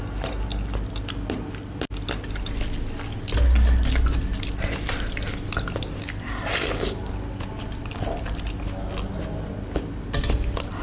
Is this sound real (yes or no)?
yes